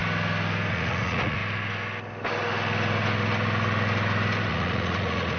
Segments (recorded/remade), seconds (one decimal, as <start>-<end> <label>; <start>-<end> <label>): 0.0-0.7 recorded; 0.7-1.4 remade; 1.4-4.5 recorded; 4.5-5.4 remade